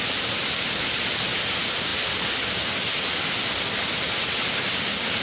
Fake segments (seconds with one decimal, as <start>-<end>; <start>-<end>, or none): none